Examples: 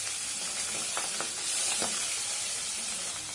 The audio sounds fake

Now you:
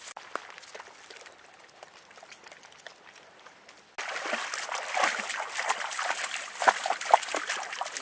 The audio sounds real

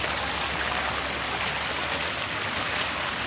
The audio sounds real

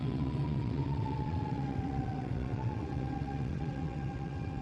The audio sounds fake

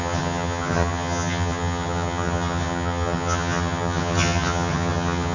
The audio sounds fake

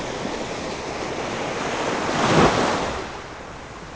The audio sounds real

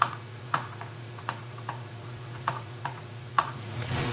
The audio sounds fake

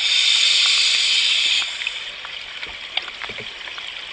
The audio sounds real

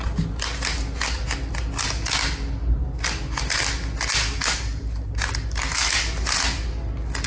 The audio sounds real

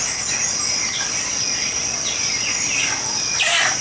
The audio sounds real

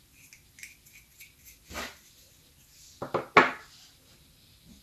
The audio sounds real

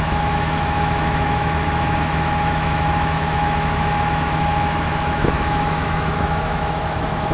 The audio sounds fake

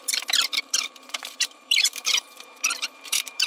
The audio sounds fake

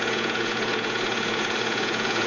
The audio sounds fake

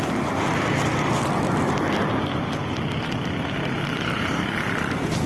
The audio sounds real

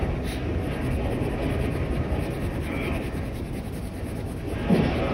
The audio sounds real